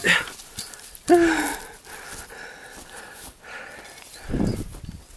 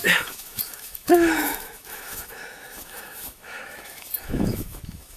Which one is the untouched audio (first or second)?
first